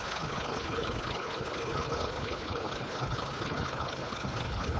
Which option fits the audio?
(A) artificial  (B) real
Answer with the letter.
A